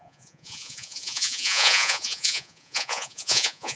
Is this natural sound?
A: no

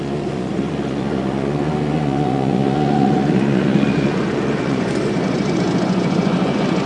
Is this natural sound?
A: no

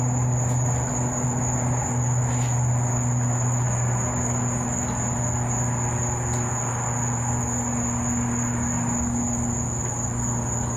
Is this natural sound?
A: yes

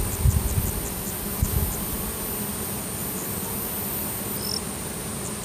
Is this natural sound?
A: yes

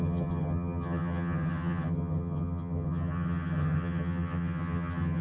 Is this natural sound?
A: no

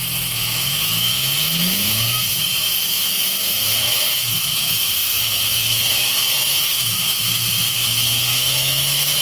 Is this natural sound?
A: no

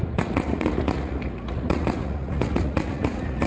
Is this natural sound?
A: no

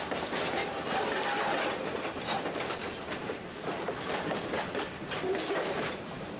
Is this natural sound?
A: yes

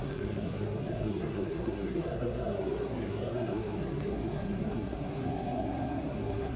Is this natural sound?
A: no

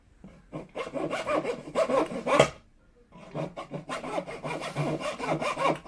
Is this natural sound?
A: yes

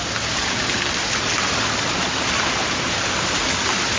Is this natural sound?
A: yes